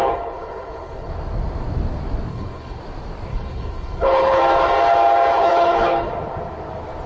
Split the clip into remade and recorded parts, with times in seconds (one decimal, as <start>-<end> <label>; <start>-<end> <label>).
0.0-1.1 remade; 1.1-2.3 recorded; 2.3-2.8 remade; 2.8-3.3 recorded; 3.3-4.4 remade; 4.4-5.3 recorded; 5.3-6.1 remade; 6.1-7.1 recorded